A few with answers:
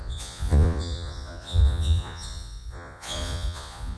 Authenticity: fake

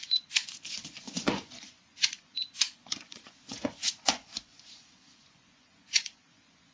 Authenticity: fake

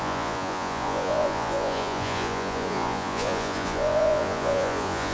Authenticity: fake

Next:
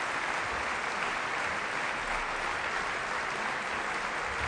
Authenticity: real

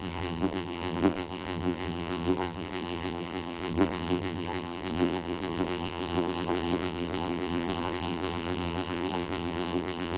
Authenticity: fake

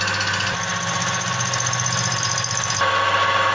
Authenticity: real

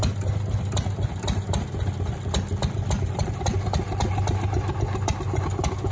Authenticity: real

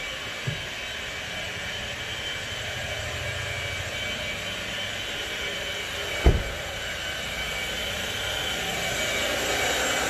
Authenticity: real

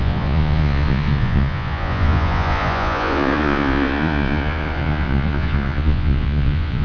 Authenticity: fake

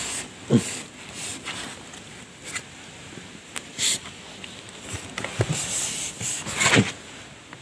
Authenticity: real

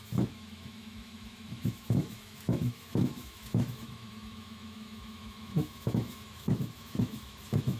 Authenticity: fake